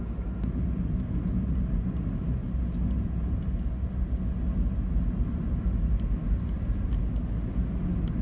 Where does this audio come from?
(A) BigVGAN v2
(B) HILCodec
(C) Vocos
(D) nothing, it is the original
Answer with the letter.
D